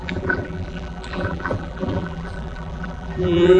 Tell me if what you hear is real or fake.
fake